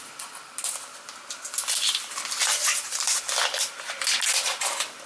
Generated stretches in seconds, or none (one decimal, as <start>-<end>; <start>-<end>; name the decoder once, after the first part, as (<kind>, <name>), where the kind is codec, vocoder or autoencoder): 2.6-3.2 (vocoder, BigVGAN v2)